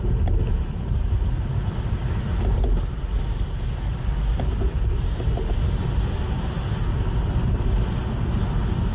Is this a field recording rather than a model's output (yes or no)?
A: yes